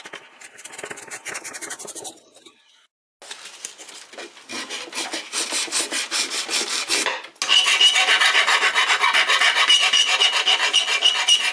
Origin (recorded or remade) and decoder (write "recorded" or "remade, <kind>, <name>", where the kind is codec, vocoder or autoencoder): recorded